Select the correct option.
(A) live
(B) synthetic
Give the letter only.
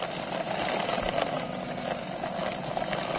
A